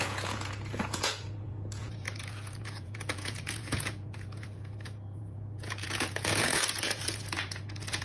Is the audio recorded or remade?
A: remade